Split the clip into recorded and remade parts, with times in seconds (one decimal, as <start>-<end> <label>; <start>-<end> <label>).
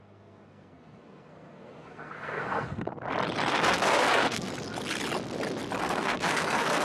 0.0-2.9 remade; 2.9-3.5 recorded; 3.5-4.5 remade; 4.5-5.8 recorded; 5.8-6.8 remade